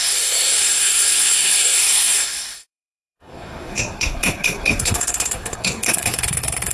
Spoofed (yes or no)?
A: yes